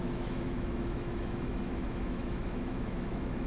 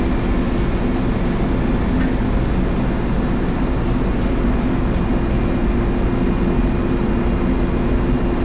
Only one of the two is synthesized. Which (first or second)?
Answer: first